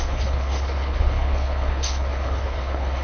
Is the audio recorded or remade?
remade